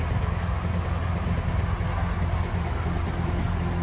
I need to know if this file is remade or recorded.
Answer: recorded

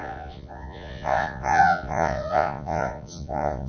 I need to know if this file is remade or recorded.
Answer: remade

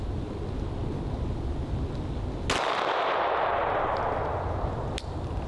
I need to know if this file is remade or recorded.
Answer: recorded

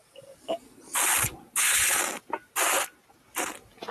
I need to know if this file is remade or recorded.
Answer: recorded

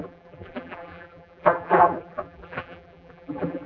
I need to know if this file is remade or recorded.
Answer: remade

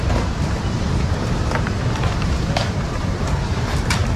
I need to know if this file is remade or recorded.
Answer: remade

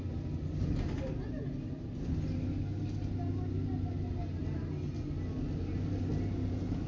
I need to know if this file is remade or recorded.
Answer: recorded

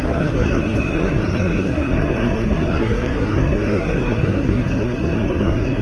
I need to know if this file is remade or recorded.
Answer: remade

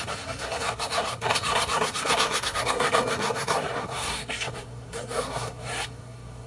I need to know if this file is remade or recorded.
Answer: remade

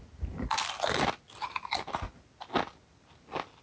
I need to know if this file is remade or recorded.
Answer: recorded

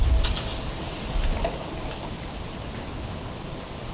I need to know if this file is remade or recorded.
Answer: recorded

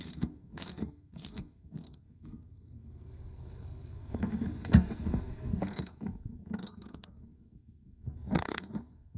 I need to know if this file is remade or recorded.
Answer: remade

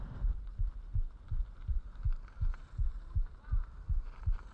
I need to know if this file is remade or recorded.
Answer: recorded